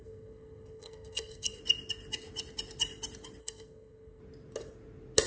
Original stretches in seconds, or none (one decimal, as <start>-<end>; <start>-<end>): 1.6-3.4; 4.2-5.3